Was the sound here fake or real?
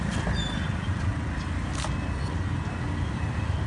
real